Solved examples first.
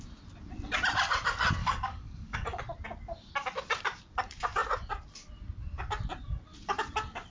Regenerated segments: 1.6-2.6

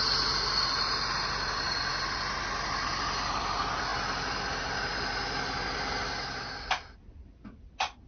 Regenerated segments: none